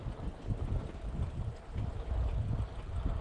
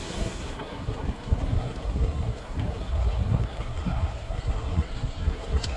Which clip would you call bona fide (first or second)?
first